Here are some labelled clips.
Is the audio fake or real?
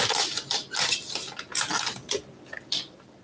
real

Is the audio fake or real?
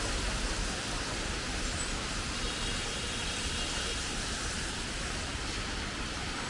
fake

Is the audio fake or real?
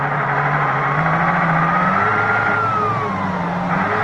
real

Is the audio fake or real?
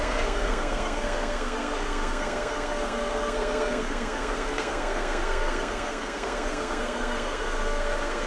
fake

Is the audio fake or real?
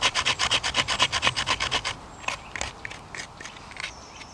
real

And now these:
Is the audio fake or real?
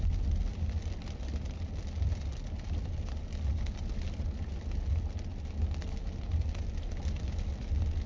real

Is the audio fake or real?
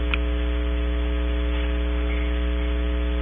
real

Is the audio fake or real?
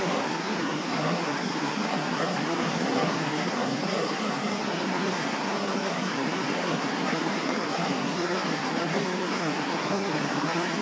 fake